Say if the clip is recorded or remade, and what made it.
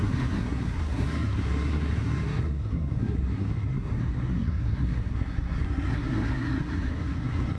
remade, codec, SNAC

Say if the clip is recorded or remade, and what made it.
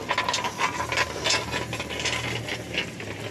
recorded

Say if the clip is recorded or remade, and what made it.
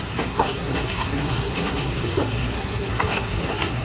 remade, codec, SNAC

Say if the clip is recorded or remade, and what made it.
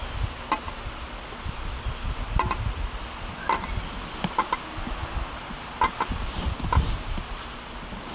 recorded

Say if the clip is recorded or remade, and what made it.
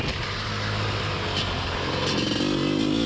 recorded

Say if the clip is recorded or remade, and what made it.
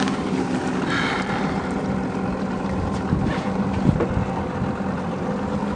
recorded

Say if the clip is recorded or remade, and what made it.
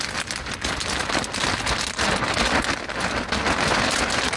recorded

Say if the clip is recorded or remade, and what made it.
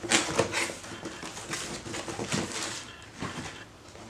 recorded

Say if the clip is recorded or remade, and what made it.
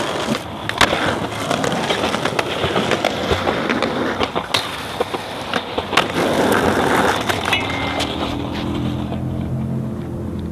recorded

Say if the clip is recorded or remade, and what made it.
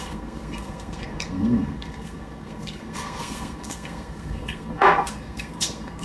remade, codec, SNAC